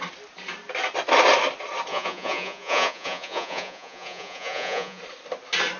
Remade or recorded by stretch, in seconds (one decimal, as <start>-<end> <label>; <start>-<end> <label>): 0.0-1.9 recorded; 1.9-5.0 remade; 5.0-5.8 recorded